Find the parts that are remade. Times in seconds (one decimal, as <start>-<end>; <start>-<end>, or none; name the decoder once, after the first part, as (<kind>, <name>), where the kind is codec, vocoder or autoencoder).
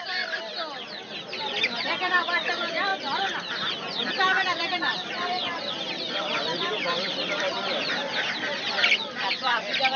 0.0-0.5 (vocoder, BigVGAN v2); 2.5-2.9; 4.1-10.0